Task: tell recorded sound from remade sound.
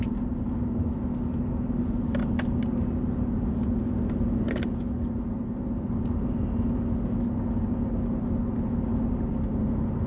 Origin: recorded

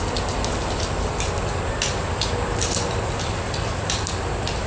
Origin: recorded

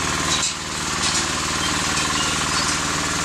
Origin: recorded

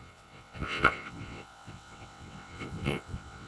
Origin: remade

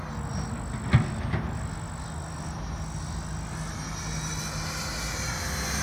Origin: recorded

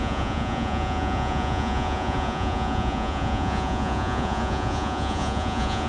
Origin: remade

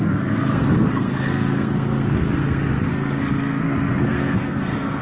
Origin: remade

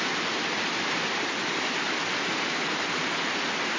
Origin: recorded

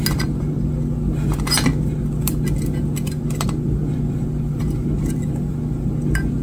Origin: recorded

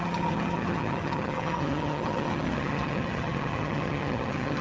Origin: remade